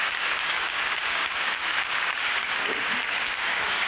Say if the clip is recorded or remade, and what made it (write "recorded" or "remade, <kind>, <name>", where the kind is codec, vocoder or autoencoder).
remade, codec, DAC